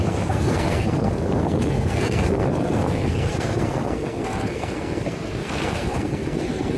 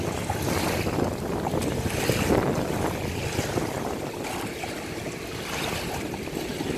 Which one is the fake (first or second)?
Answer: first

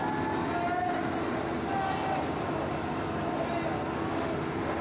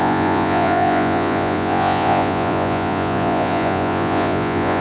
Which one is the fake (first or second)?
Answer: second